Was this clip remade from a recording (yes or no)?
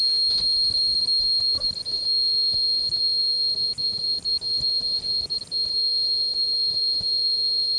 no